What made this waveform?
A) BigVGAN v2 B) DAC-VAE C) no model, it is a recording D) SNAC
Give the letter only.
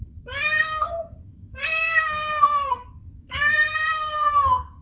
D